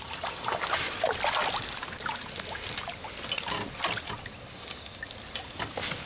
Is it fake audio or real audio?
real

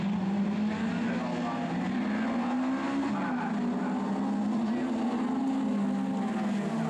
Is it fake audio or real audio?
real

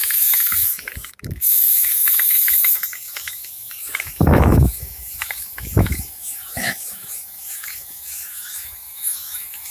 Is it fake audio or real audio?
fake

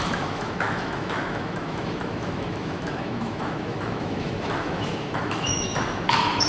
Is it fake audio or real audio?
fake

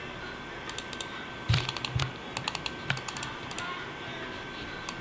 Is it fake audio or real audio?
real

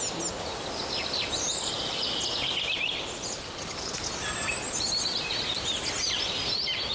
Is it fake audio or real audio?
real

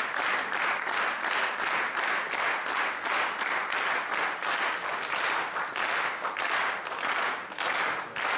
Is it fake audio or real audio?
real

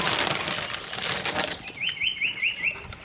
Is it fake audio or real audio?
real